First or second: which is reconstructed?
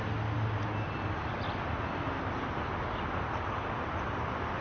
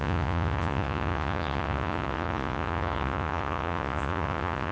second